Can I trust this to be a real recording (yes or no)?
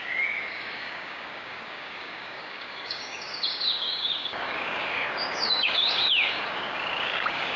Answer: no